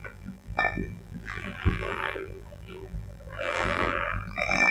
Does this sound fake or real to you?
fake